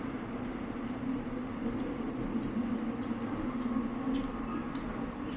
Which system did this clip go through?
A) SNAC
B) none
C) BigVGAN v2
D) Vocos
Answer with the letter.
B